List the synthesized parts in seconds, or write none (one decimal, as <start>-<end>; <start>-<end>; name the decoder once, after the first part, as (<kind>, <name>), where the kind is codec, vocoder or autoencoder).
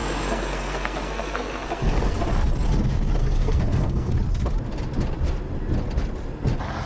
0.0-2.2 (codec, SNAC); 3.2-4.1